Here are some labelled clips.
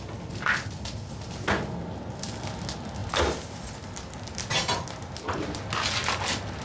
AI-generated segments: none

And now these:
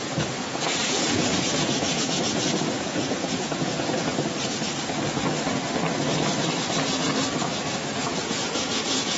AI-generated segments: 0.0-4.1 (vocoder, Vocos); 7.9-9.2

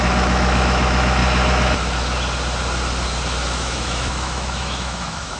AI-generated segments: 0.0-1.2 (autoencoder, DAC-VAE); 3.5-5.4

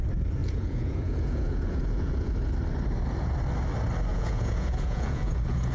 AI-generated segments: 0.4-2.3 (vocoder, Vocos); 4.1-5.7